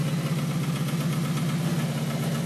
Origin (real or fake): real